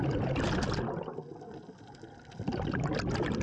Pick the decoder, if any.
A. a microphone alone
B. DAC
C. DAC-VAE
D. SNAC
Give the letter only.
A